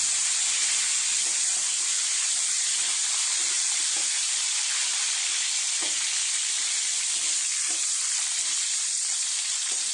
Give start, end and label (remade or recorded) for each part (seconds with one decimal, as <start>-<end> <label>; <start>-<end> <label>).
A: 0.0-3.4 recorded; 3.4-5.2 remade; 5.2-7.5 recorded; 7.5-9.9 remade